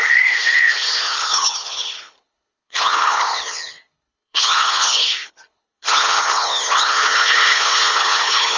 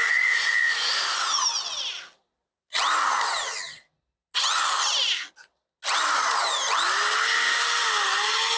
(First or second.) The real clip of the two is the second